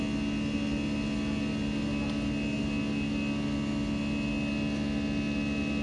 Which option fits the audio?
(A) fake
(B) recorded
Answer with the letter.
B